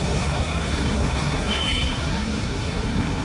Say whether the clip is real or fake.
fake